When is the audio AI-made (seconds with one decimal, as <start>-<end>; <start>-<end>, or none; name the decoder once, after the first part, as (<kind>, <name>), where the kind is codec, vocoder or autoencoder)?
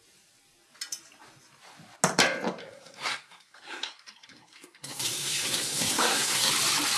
2.6-6.5 (codec, SNAC)